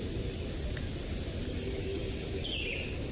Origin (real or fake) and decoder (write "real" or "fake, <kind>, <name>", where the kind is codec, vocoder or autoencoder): real